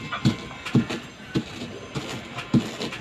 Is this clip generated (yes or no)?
no